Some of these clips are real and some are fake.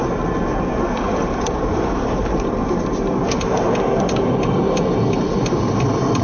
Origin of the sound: real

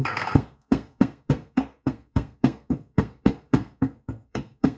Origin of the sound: fake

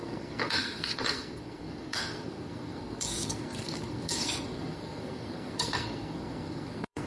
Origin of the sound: fake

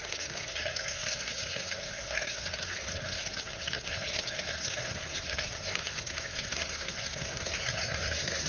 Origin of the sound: fake